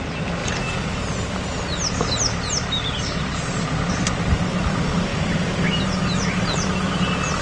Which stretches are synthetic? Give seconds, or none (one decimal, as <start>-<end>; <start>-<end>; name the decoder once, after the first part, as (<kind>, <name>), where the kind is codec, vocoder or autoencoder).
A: none